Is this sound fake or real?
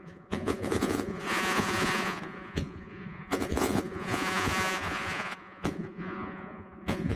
fake